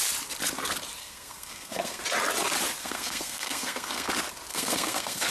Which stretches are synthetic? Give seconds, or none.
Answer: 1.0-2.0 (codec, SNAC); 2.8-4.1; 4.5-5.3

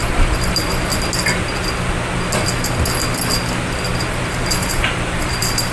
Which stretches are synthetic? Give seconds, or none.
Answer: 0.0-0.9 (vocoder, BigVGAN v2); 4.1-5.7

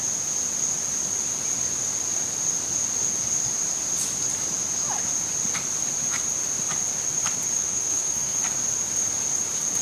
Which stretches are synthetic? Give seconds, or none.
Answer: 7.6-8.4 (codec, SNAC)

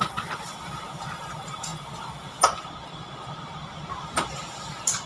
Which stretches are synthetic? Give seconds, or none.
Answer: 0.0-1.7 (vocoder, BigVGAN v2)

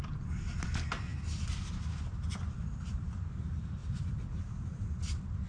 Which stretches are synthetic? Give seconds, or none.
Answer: none

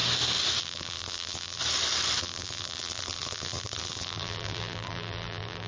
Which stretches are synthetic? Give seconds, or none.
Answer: 0.6-1.6 (vocoder, BigVGAN v2); 2.2-5.7

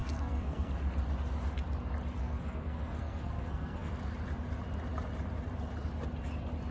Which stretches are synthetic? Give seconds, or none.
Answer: 0.0-0.7 (codec, SNAC); 2.2-3.9